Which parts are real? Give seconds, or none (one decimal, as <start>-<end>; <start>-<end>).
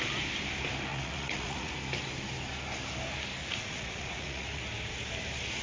0.0-0.9; 1.7-3.4; 4.6-5.6